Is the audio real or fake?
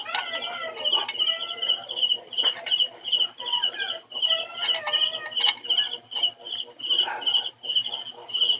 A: real